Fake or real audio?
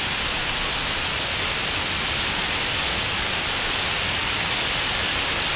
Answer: real